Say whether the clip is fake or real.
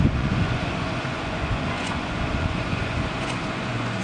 fake